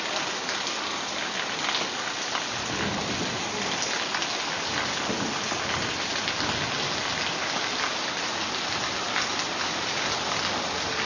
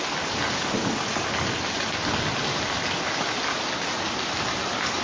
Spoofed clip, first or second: second